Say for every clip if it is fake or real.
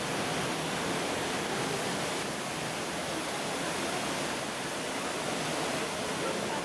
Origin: real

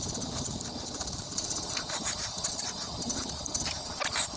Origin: fake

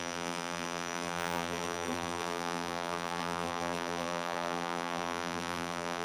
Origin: fake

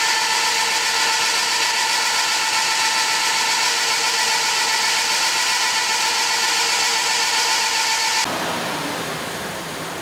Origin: real